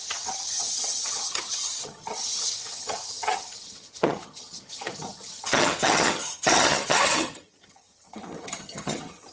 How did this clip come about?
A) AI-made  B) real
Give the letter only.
A